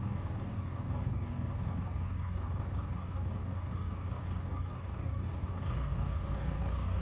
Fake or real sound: fake